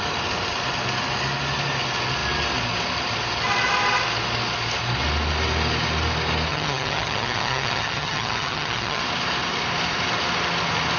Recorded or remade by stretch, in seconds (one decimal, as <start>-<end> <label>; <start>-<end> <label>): 0.0-6.5 recorded; 6.5-9.0 remade; 9.0-11.0 recorded